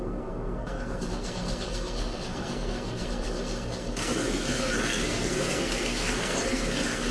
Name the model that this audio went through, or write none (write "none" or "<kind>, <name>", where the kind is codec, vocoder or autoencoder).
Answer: codec, SNAC